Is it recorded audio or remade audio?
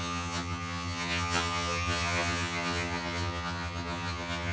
remade